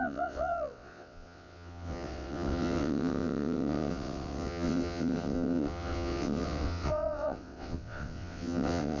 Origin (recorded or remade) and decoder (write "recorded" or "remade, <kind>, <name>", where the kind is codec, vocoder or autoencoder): remade, vocoder, WaveNeXt